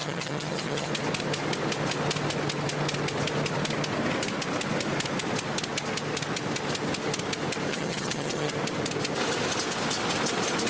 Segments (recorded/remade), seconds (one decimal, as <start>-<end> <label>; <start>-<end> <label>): 0.0-0.9 remade; 0.9-7.7 recorded; 7.7-8.5 remade; 8.5-10.7 recorded